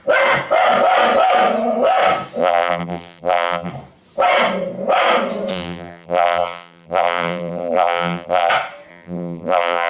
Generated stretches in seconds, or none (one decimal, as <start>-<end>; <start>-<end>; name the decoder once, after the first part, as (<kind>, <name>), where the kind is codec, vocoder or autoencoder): 2.4-3.7 (vocoder, BigVGAN v2); 5.5-8.5; 8.9-9.9